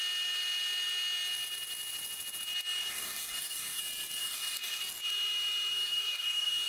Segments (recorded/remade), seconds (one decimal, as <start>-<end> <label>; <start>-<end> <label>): 0.0-2.9 recorded; 2.9-3.8 remade; 3.8-4.2 recorded; 4.2-4.8 remade; 4.8-5.7 recorded; 5.7-6.7 remade